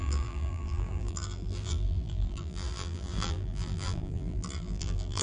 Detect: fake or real fake